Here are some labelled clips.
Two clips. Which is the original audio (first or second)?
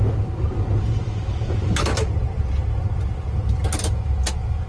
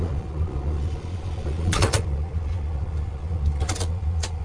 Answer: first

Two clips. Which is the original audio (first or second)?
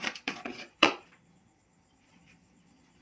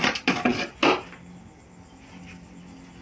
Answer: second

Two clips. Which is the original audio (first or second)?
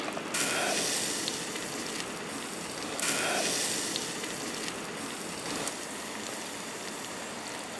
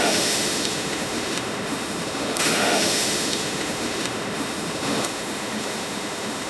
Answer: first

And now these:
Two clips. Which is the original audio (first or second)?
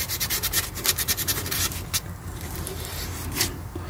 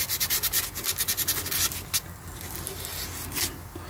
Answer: second